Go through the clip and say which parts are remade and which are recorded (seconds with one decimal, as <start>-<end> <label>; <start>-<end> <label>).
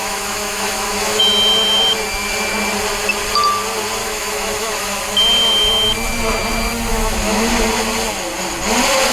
0.0-1.2 remade; 1.2-4.0 recorded; 4.0-5.0 remade; 5.0-6.9 recorded; 6.9-7.5 remade; 7.5-9.1 recorded